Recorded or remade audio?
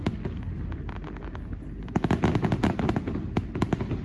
recorded